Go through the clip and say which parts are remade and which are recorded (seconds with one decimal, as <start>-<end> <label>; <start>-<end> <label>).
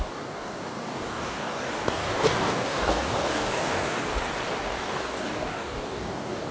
0.0-4.1 remade; 4.1-4.6 recorded; 4.6-6.5 remade